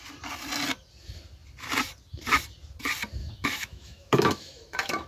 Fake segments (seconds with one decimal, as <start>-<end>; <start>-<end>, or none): 3.2-5.1